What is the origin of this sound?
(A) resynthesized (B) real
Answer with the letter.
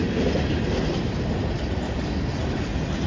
B